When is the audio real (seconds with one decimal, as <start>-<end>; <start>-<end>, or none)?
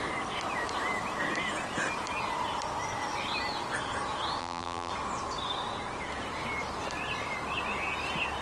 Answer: 0.0-4.4; 4.9-8.4